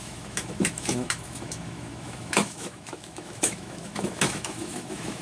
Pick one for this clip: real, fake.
fake